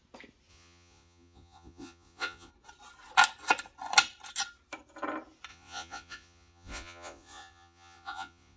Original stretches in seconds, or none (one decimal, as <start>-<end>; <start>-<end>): 0.0-0.5; 2.5-5.5